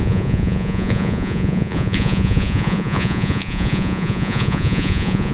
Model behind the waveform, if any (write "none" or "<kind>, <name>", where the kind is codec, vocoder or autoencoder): vocoder, Vocos